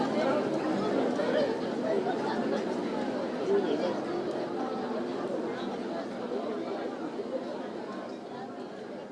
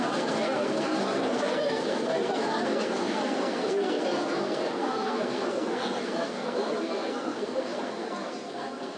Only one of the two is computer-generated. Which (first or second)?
second